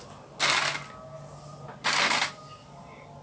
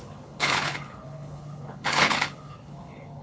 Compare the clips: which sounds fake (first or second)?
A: second